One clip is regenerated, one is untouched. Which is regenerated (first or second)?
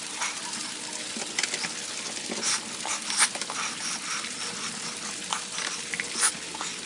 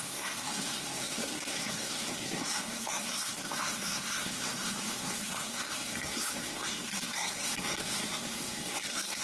second